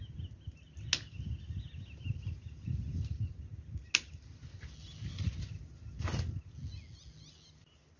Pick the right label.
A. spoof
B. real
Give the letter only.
B